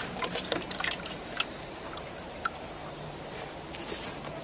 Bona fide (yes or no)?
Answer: no